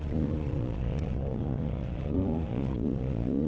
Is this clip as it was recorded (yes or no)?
no